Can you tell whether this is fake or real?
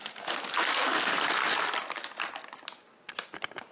real